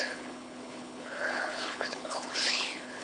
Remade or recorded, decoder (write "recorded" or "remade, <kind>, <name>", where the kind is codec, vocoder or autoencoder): remade, codec, HILCodec